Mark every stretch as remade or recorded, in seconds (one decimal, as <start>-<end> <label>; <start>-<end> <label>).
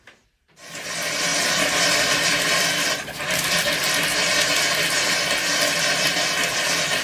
0.0-7.0 recorded